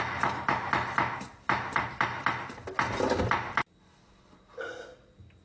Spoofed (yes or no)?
no